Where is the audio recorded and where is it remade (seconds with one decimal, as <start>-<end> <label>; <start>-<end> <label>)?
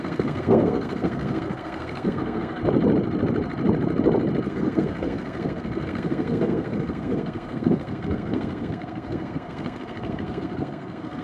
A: 0.0-2.6 remade; 2.6-4.5 recorded; 4.5-11.2 remade